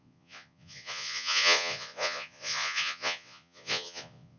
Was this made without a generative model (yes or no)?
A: no